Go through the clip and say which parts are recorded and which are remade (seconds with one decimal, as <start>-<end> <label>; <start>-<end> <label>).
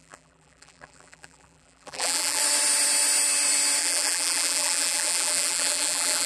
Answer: 0.0-2.4 remade; 2.4-3.8 recorded; 3.8-6.3 remade